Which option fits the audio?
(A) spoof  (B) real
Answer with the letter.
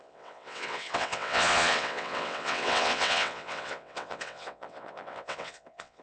A